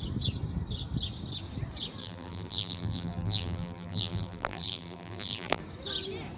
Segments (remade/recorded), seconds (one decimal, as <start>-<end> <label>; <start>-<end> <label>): 0.0-2.0 recorded; 2.0-5.6 remade; 5.6-6.4 recorded